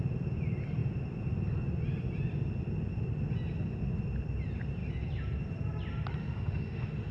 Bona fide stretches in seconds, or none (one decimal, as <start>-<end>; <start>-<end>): 0.0-6.2